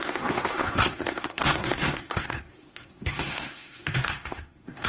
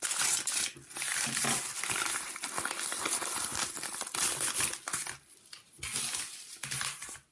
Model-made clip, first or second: first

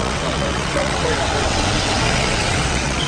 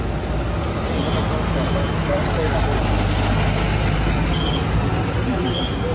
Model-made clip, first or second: first